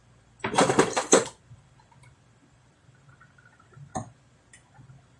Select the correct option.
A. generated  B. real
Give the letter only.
A